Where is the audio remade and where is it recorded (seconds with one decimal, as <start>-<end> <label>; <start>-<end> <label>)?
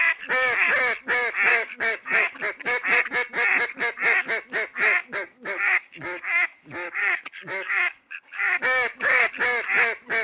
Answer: 0.0-1.5 recorded; 1.5-2.4 remade; 2.4-5.0 recorded; 5.0-9.3 remade; 9.3-10.2 recorded